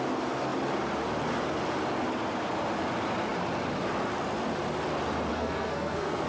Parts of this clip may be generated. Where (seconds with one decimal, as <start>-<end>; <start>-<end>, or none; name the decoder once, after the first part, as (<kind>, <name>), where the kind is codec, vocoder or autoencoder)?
5.3-6.3 (codec, SNAC)